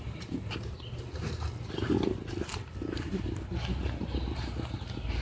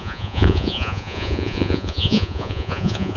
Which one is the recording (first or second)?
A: first